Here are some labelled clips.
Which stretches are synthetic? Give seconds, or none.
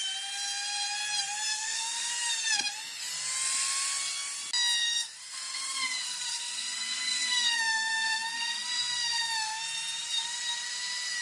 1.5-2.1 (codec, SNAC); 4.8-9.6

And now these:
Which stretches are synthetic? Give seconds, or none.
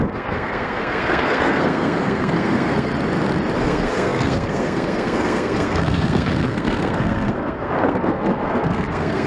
0.0-2.9 (codec, SNAC); 3.6-9.3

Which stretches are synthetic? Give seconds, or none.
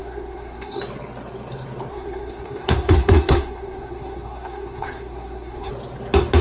0.0-0.8 (codec, SNAC); 1.9-5.7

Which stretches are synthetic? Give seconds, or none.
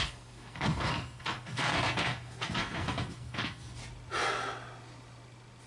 0.0-3.8 (codec, SNAC)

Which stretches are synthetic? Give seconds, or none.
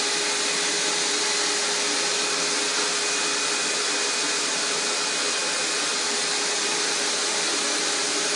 none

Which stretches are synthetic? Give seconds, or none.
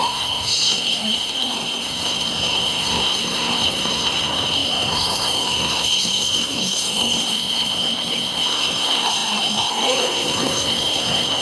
0.0-11.4 (codec, SNAC)